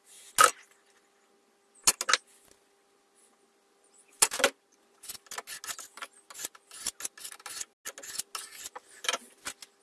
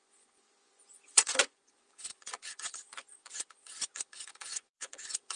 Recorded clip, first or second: first